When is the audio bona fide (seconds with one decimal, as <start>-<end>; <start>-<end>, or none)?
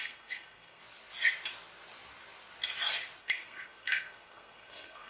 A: 0.8-3.2